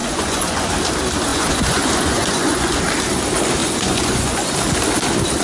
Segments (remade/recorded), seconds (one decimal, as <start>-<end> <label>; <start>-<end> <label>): 0.0-0.7 remade; 0.7-1.3 recorded; 1.3-2.8 remade; 2.8-3.6 recorded; 3.6-4.5 remade; 4.5-5.4 recorded